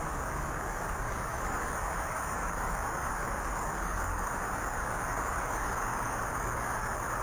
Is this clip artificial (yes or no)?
yes